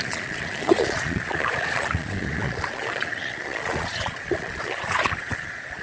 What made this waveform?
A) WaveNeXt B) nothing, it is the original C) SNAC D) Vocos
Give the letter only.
D